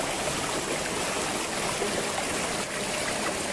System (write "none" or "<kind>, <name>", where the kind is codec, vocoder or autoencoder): none